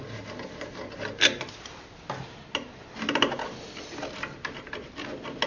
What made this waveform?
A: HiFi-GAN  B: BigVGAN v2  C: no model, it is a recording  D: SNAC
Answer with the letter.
C